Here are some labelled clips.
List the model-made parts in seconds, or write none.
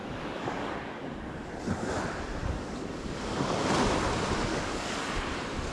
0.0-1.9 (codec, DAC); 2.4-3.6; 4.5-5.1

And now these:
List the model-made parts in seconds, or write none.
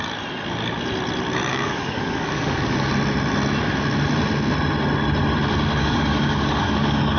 1.5-2.9 (codec, DAC); 5.8-7.2